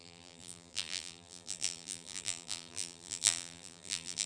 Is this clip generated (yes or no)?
yes